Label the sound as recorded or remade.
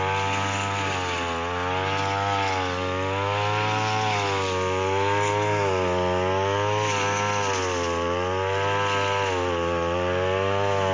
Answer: recorded